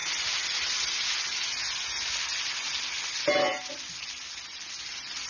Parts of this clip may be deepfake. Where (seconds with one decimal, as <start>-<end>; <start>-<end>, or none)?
none